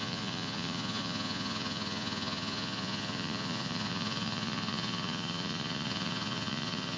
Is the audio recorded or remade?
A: remade